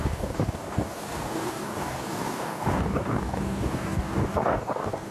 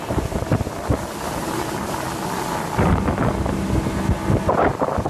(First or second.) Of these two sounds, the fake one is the first